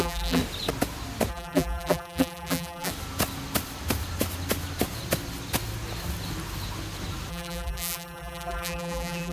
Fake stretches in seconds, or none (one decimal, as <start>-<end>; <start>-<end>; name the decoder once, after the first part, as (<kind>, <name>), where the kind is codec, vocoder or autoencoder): 0.0-0.4 (vocoder, BigVGAN v2); 1.3-2.9; 7.3-9.3